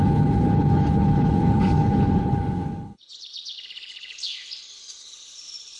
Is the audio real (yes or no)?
no